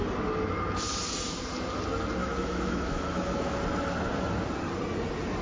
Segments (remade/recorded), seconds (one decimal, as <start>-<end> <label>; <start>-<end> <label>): 0.0-2.2 recorded; 2.2-3.6 remade; 3.6-5.4 recorded